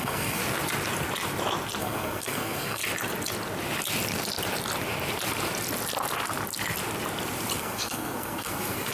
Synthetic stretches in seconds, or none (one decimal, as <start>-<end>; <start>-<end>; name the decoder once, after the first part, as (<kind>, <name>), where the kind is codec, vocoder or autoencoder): 0.0-0.4 (codec, SNAC); 1.8-2.8; 7.6-8.9